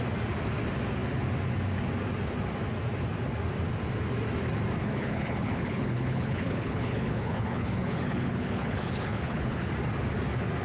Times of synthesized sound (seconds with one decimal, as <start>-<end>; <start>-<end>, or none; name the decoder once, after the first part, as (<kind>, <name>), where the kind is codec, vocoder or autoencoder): 4.8-9.7 (codec, HILCodec)